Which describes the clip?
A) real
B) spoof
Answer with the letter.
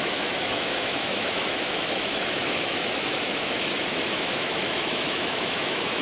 B